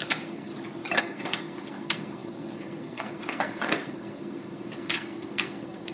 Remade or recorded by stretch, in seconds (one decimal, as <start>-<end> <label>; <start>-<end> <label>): 0.0-0.5 remade; 0.5-1.0 recorded; 1.0-5.9 remade